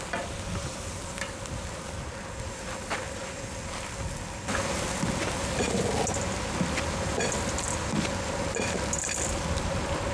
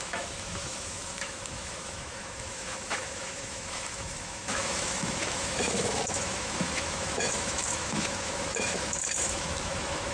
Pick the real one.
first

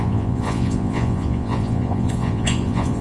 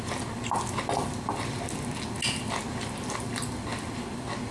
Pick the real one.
second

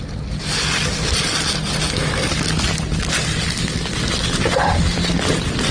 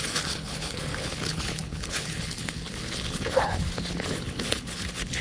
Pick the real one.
first